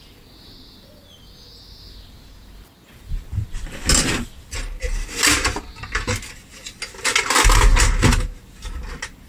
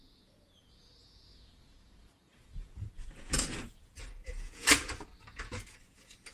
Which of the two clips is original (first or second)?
first